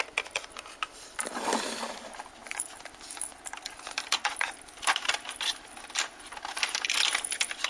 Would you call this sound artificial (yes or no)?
no